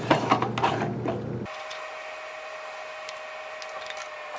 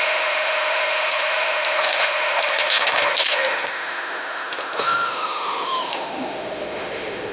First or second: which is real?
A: first